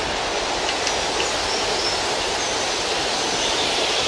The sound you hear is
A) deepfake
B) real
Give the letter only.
B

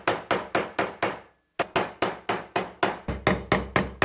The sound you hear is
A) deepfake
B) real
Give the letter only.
B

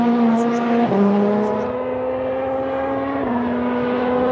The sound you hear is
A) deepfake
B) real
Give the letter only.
B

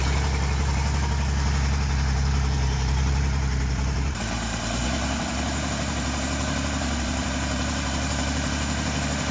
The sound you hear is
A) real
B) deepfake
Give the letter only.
B